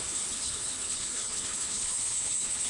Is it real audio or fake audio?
fake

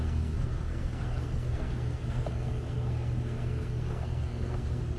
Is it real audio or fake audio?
fake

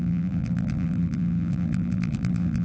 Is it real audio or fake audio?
fake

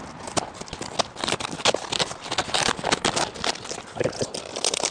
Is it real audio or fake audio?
real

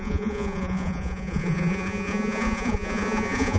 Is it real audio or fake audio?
fake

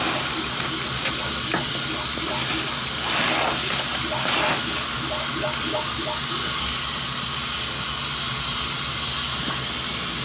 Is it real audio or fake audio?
real